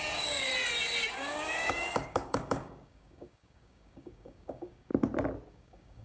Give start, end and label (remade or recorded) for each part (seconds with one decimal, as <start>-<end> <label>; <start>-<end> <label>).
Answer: 0.0-0.5 remade; 0.5-1.1 recorded; 1.1-4.9 remade; 4.9-5.5 recorded; 5.5-6.0 remade